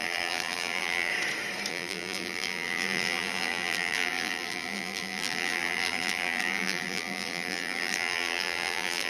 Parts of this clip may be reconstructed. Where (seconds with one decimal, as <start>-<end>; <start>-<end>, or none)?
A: 0.0-1.1; 1.7-9.1